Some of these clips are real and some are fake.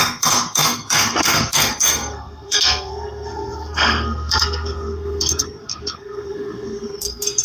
fake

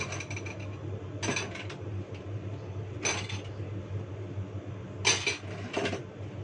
real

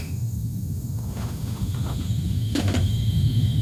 fake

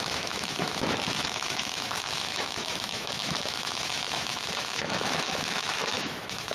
fake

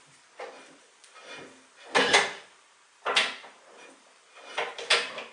real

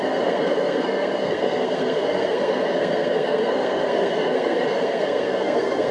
fake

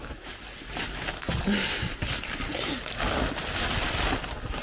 real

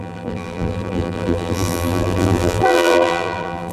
fake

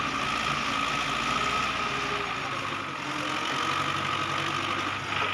real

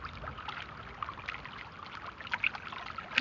real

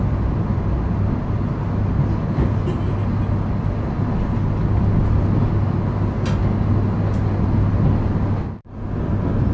real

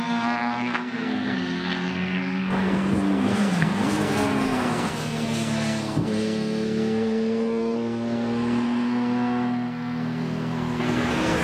fake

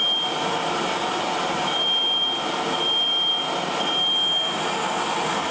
real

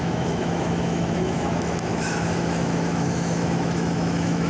fake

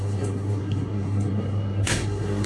fake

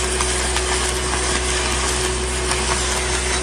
real